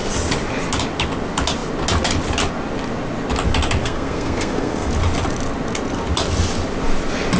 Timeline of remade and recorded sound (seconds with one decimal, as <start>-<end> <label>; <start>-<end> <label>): 0.0-3.8 recorded; 3.8-4.9 remade; 4.9-7.4 recorded